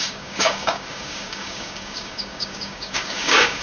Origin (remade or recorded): remade